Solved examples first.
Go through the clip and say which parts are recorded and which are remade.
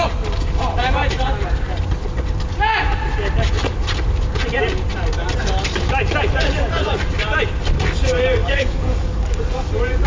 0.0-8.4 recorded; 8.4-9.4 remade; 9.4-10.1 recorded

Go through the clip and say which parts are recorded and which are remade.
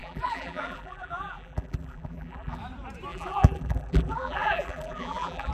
0.0-2.6 remade; 2.6-3.1 recorded; 3.1-5.5 remade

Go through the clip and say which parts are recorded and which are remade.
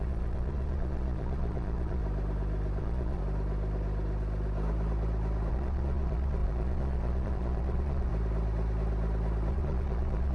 0.0-2.0 remade; 2.0-2.8 recorded; 2.8-3.2 remade; 3.2-5.5 recorded; 5.5-8.1 remade; 8.1-9.5 recorded; 9.5-10.3 remade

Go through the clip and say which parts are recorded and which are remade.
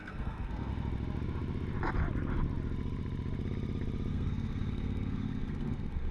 0.0-0.7 remade; 0.7-4.1 recorded; 4.1-6.1 remade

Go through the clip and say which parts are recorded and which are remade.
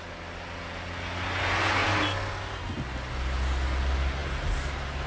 0.0-5.1 recorded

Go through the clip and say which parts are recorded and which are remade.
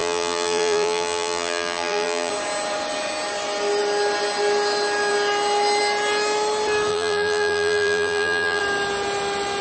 0.0-2.3 remade; 2.3-6.9 recorded; 6.9-8.6 remade; 8.6-9.6 recorded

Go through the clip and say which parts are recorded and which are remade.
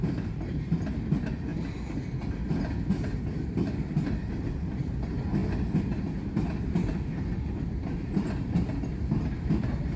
0.0-10.0 recorded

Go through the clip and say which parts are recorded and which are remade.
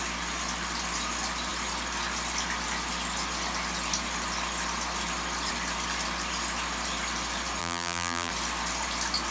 0.0-7.6 recorded; 7.6-8.3 remade; 8.3-9.3 recorded